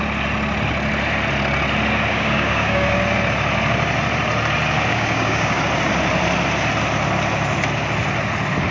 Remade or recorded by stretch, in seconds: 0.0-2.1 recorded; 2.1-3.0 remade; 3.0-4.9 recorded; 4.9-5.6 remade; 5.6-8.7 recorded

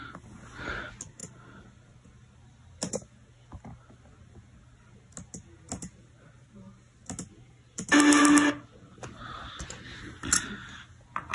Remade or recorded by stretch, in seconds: 0.0-11.3 recorded

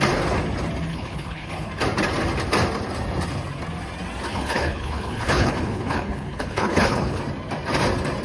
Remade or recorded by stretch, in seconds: 0.0-0.9 recorded; 0.9-1.7 remade; 1.7-4.3 recorded; 4.3-7.2 remade; 7.2-8.2 recorded

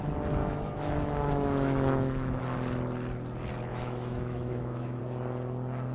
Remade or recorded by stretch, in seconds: 0.0-0.4 recorded; 0.4-2.4 remade; 2.4-3.7 recorded; 3.7-5.0 remade; 5.0-5.9 recorded

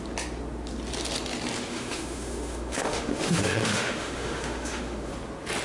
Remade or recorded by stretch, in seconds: 0.0-1.7 recorded; 1.7-5.1 remade; 5.1-5.6 recorded

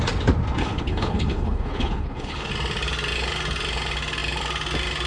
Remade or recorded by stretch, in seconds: 0.0-0.6 recorded; 0.6-2.5 remade; 2.5-5.1 recorded